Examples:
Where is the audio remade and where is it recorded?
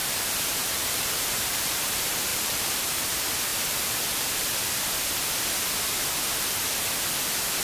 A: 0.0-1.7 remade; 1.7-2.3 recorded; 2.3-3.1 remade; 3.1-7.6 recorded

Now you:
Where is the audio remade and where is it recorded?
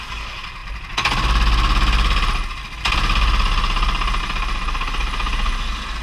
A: 0.0-6.0 recorded